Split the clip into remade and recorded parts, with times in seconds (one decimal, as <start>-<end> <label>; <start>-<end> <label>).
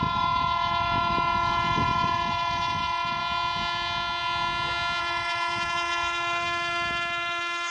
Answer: 0.0-3.2 remade; 3.2-5.0 recorded; 5.0-7.7 remade